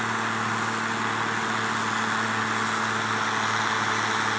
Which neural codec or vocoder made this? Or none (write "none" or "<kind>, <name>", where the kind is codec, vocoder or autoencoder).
none